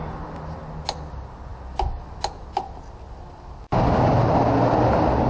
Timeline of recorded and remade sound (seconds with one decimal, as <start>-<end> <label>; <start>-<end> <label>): 0.0-5.3 recorded